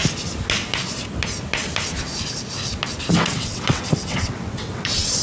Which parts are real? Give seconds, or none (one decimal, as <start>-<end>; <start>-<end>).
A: 0.0-3.1